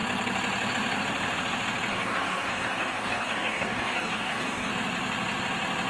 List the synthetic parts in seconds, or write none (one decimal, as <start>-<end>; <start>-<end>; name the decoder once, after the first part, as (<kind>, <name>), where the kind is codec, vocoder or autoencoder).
1.9-4.7 (codec, DAC)